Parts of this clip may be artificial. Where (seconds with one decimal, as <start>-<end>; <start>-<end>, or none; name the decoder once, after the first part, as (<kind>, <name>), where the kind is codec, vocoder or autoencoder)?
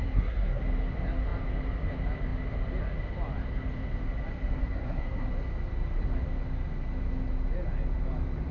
0.0-0.6 (codec, SNAC); 4.6-5.3